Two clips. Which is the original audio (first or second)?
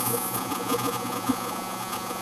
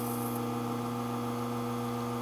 second